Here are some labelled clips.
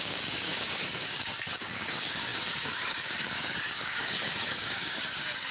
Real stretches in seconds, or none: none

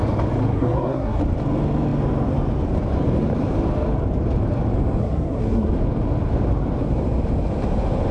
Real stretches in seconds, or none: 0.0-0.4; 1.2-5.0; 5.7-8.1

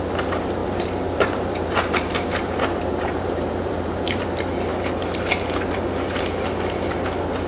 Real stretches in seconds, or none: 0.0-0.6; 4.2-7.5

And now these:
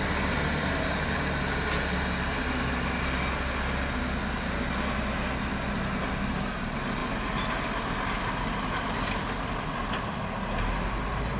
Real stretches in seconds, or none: 0.0-11.4

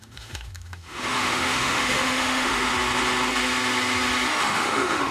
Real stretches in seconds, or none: 2.7-4.4